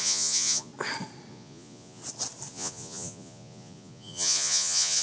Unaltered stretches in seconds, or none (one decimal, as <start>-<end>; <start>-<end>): 0.7-1.3; 2.0-2.5